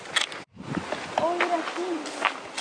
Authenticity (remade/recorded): recorded